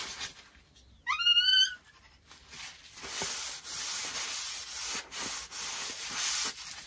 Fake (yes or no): no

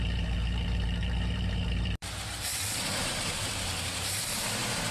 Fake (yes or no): yes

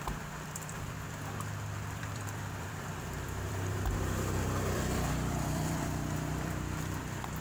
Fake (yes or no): yes